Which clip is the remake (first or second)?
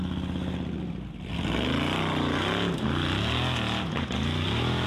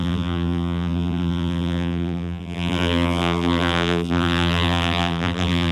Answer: second